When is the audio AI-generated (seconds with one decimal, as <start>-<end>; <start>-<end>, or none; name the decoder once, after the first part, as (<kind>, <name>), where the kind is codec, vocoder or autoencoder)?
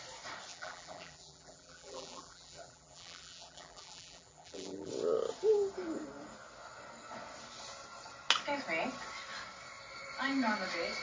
0.5-4.9 (vocoder, BigVGAN v2)